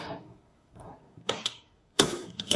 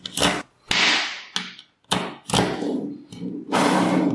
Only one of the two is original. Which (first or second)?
second